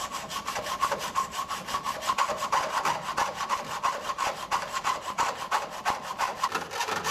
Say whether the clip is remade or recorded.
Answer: remade